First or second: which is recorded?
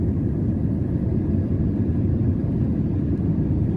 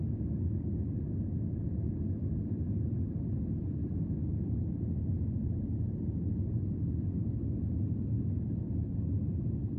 second